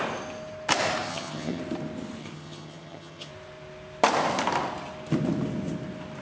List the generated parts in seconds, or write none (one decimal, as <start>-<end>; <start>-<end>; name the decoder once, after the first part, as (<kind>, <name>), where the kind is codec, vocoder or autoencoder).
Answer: 1.1-1.6 (vocoder, HiFi-GAN); 2.2-3.3